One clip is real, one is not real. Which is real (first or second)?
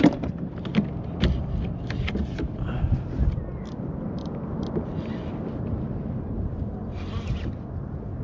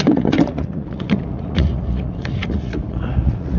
first